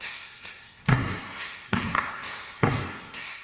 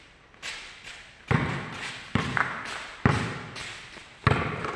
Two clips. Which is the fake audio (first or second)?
first